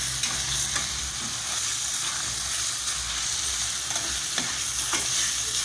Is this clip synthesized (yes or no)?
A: no